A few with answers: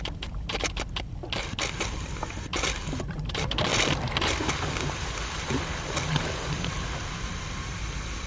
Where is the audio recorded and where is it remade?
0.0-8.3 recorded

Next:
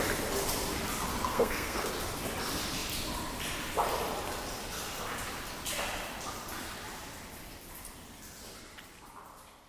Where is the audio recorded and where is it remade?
0.0-1.3 recorded; 1.3-1.9 remade; 1.9-9.7 recorded

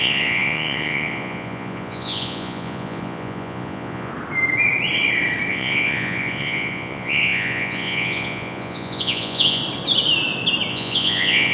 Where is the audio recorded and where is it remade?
0.0-4.1 remade; 4.1-5.5 recorded; 5.5-9.6 remade; 9.6-10.7 recorded; 10.7-11.5 remade